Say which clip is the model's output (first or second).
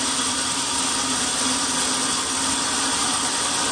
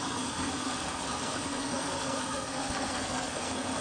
second